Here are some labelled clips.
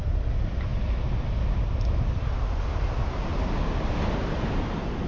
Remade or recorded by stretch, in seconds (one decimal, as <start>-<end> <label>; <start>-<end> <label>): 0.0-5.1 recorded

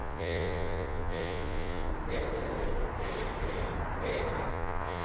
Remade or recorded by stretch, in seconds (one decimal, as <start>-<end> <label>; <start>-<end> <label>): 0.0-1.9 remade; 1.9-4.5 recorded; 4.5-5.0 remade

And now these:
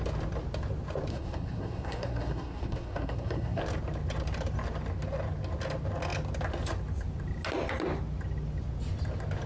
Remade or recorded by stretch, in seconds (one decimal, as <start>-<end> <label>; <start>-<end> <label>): 0.0-1.1 recorded; 1.1-3.6 remade; 3.6-9.5 recorded

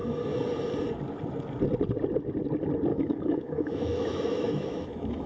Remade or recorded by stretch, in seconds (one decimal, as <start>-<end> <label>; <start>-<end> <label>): 0.0-2.9 recorded; 2.9-5.3 remade

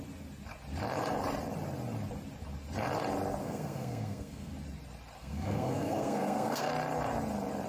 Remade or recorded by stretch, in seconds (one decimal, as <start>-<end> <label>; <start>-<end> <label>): 0.0-3.4 recorded; 3.4-4.5 remade; 4.5-5.2 recorded; 5.2-6.7 remade; 6.7-7.7 recorded

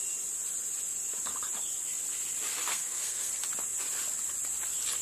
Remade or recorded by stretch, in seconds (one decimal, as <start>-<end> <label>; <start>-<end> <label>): 0.0-2.6 recorded; 2.6-3.3 remade; 3.3-5.0 recorded